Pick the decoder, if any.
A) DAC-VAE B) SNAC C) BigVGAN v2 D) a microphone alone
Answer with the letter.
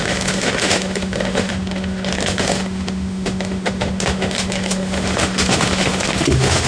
A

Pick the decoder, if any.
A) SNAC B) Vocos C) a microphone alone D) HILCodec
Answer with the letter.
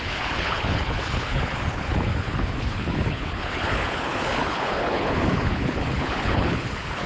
D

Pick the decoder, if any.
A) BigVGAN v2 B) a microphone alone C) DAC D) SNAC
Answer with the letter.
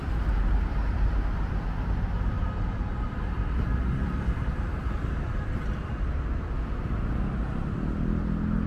B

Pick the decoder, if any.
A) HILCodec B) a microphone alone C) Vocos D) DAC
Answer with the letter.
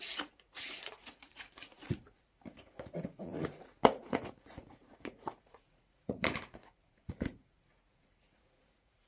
C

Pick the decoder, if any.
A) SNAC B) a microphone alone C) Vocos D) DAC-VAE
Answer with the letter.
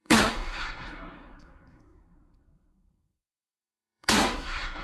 A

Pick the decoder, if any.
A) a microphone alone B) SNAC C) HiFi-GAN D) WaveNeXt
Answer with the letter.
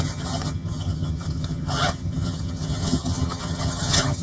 C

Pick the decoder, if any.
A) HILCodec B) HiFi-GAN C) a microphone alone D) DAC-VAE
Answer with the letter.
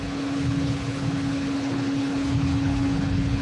A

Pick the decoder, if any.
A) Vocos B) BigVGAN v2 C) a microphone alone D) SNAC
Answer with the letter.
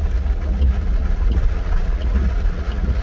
A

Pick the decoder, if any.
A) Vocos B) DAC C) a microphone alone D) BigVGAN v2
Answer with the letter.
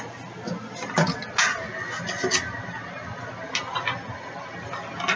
C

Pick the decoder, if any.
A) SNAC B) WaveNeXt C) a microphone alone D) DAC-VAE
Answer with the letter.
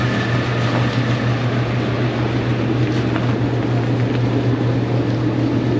C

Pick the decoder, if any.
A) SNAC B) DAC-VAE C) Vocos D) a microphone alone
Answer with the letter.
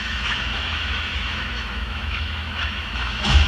B